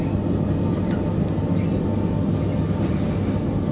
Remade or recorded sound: recorded